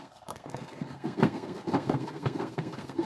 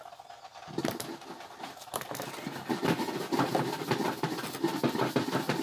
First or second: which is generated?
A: first